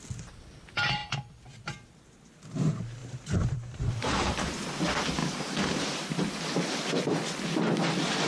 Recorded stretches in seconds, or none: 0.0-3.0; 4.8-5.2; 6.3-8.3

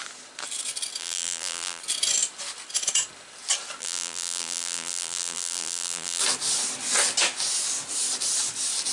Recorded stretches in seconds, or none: 0.0-1.0; 1.8-3.8; 6.2-8.9

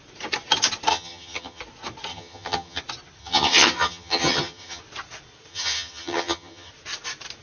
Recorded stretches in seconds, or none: 0.0-0.9; 1.6-2.1; 2.8-3.2; 4.8-5.5; 6.7-7.4

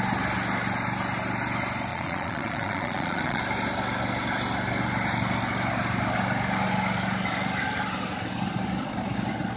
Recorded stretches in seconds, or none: 0.0-1.9; 3.4-9.6

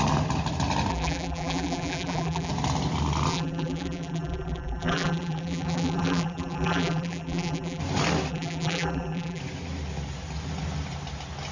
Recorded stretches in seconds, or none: 0.0-0.9; 2.5-3.3; 7.8-8.3; 9.4-11.5

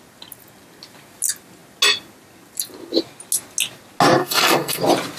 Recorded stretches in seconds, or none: 0.0-4.2; 4.8-5.2

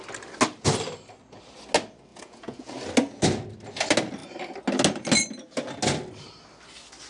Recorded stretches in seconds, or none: 0.0-2.1; 2.7-7.1

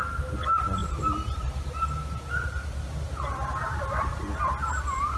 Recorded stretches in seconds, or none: 0.0-5.2